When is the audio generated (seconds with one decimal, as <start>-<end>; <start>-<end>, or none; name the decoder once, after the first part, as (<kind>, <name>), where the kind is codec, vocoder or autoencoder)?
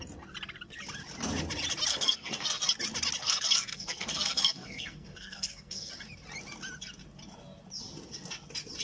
1.9-2.7 (codec, SNAC); 3.2-5.9